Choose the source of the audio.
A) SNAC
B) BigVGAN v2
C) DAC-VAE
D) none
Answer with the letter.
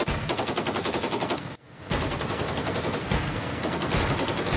A